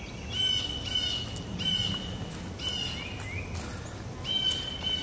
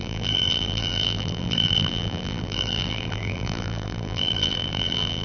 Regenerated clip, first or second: second